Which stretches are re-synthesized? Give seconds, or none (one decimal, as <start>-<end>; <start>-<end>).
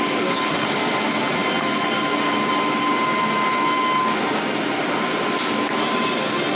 none